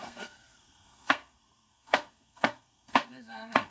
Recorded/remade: remade